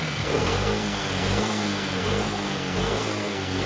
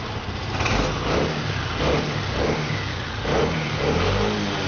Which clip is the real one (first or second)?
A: second